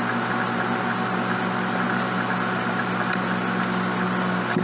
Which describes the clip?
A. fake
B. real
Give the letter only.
B